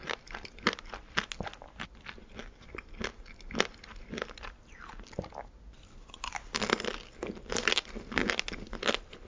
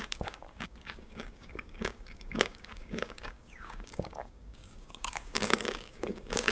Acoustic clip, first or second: first